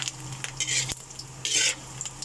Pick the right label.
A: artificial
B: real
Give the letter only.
B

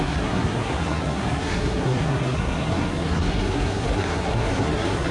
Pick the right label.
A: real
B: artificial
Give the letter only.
B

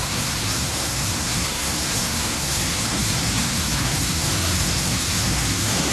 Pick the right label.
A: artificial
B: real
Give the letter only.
A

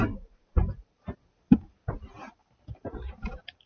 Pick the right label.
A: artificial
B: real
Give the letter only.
B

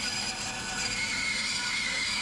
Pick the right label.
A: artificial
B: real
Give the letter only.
B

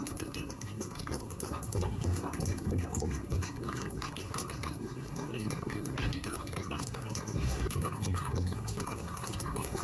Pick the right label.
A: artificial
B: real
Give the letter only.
A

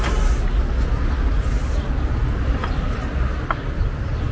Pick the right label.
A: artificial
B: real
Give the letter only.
B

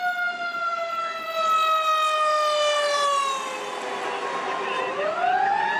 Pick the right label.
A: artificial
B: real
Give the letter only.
B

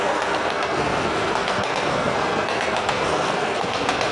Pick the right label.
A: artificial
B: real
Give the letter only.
A